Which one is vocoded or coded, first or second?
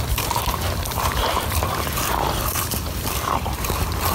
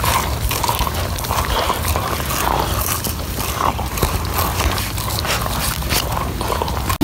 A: first